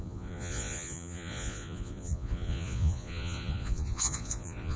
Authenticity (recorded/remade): remade